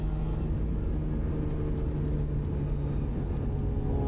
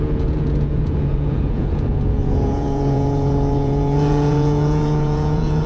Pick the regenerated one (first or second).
second